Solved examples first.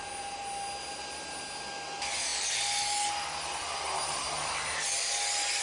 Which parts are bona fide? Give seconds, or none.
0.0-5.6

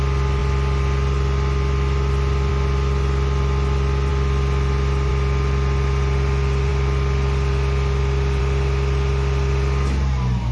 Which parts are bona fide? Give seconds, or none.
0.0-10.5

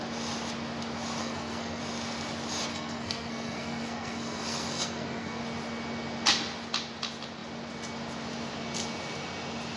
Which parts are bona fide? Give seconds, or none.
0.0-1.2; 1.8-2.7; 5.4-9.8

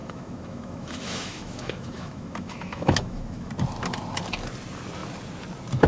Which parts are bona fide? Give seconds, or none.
3.5-5.9